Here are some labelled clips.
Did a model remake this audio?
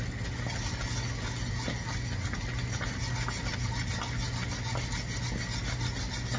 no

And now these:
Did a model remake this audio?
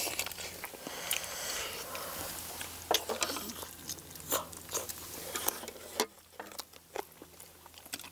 no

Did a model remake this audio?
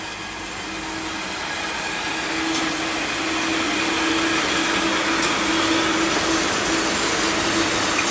no